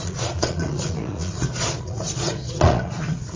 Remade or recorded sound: remade